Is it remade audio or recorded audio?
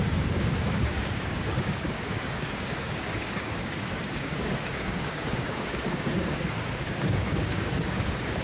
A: remade